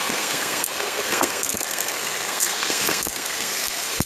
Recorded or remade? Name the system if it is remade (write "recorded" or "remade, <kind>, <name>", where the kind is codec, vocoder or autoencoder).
remade, codec, SNAC